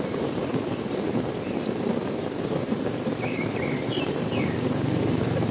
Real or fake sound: fake